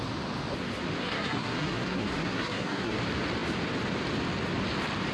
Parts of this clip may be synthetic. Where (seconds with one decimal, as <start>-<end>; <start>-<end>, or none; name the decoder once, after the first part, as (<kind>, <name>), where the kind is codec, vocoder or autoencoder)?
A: 1.0-3.0 (codec, SNAC)